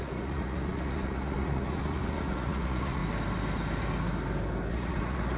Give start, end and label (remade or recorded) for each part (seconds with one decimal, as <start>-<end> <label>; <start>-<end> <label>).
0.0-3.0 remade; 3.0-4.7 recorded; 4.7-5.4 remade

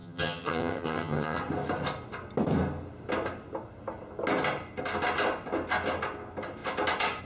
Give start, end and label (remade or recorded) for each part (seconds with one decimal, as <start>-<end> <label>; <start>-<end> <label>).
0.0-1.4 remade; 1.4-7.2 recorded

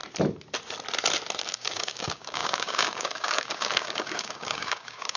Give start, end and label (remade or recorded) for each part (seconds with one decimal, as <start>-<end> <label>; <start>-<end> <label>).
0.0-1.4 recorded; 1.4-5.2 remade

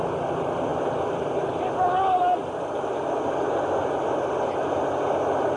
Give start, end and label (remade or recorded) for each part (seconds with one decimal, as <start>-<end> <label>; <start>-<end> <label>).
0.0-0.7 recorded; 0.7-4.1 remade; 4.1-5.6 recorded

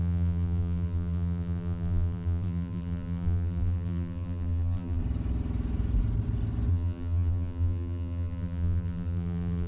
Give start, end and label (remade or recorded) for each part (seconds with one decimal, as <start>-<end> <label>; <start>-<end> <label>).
0.0-5.0 remade; 5.0-6.7 recorded; 6.7-9.7 remade

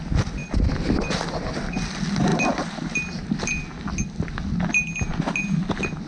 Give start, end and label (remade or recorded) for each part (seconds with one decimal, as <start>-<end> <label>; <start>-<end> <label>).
0.0-2.3 recorded; 2.3-3.3 remade; 3.3-6.1 recorded

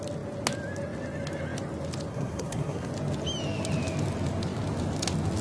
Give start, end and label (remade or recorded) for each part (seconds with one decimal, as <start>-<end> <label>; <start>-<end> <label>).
0.0-2.1 recorded; 2.1-2.9 remade; 2.9-5.4 recorded

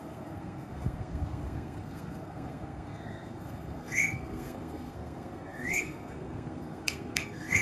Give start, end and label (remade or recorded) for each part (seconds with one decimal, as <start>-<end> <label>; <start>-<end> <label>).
0.0-7.6 remade